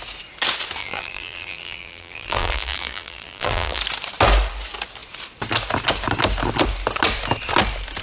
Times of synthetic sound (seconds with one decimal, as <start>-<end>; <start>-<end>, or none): 0.8-3.8